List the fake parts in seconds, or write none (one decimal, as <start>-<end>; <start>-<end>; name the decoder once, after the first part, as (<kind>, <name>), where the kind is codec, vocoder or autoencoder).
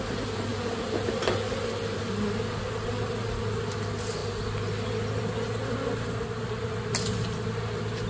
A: none